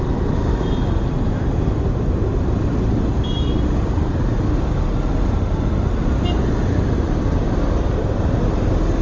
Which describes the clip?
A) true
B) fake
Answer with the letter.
A